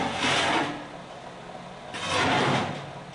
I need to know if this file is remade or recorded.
recorded